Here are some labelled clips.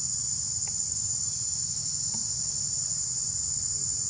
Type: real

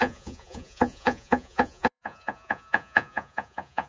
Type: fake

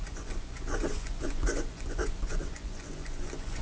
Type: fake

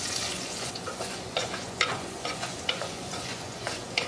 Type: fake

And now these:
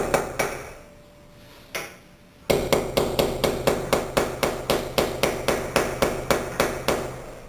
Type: real